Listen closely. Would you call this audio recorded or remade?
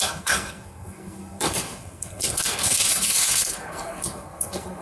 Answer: remade